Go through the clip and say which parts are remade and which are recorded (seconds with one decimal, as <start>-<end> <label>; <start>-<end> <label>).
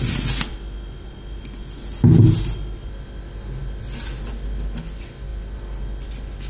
0.0-6.5 recorded